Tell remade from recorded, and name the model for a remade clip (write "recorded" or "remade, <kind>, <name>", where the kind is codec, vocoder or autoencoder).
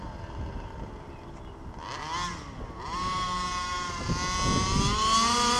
recorded